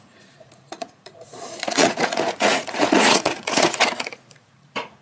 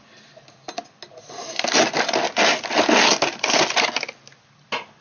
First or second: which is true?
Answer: second